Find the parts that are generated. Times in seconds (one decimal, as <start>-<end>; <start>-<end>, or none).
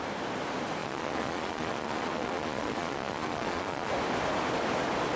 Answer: 0.8-3.9